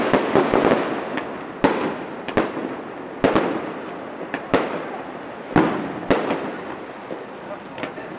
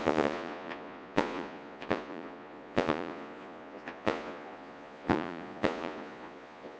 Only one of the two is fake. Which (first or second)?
second